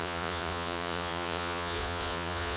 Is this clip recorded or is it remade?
remade